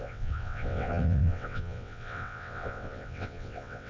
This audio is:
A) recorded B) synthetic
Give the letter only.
B